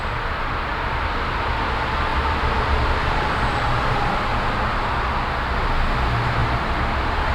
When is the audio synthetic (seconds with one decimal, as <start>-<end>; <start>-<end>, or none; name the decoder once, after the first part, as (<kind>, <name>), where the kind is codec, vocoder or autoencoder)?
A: 0.7-1.4 (vocoder, BigVGAN v2); 2.1-4.1